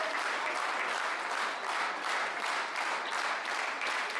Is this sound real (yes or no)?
yes